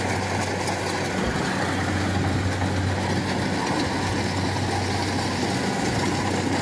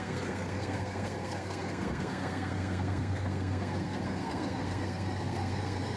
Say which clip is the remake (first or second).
second